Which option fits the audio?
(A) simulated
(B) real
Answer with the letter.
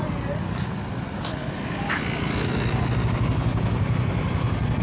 B